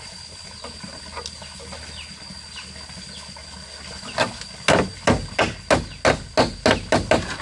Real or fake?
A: real